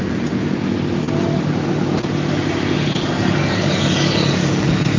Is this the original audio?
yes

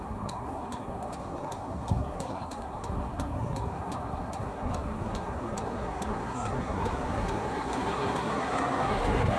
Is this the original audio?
no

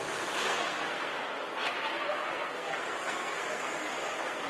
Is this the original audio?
no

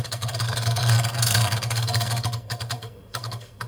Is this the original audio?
no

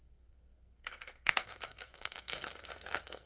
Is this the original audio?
no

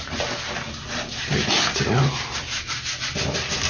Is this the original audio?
yes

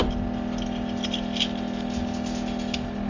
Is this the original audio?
yes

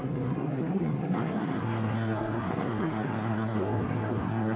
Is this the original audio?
no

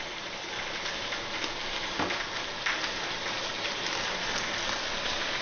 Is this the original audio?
yes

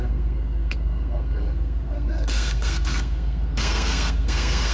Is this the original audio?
no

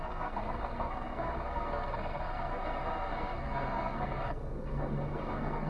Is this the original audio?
no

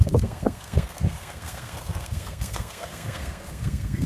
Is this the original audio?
no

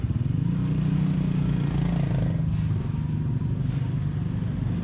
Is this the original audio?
yes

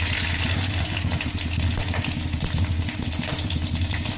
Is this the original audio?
yes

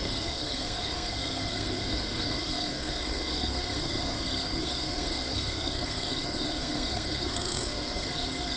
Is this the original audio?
no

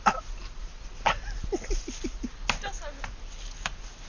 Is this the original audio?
yes